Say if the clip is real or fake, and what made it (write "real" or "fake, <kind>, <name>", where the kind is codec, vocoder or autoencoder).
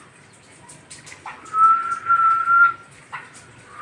real